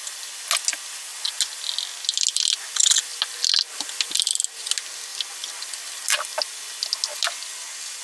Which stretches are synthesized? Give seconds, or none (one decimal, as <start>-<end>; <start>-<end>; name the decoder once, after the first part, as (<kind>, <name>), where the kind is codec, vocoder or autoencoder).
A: none